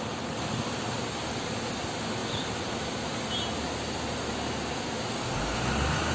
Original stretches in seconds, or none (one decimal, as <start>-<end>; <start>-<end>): 0.0-6.1

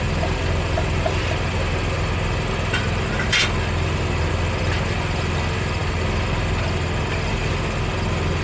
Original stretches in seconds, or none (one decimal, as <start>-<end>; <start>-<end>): 0.0-8.4